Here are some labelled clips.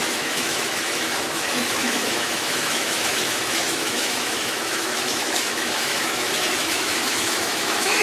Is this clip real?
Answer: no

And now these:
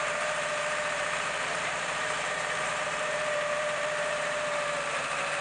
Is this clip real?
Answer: no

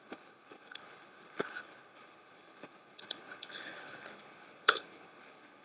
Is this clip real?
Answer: no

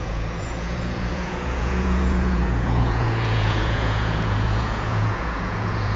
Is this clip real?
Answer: no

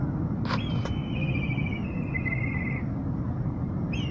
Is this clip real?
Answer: yes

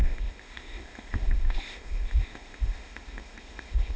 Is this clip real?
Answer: no